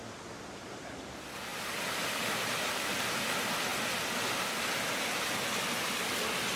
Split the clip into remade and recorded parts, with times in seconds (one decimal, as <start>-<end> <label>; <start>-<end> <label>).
0.0-1.5 recorded; 1.5-3.2 remade; 3.2-6.6 recorded